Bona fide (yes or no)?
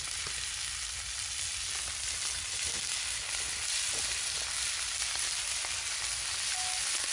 yes